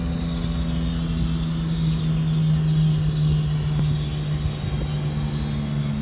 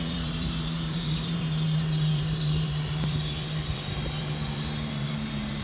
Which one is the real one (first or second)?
first